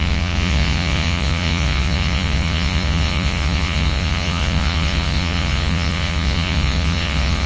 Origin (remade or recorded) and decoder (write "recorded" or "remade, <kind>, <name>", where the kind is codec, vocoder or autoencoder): remade, vocoder, Vocos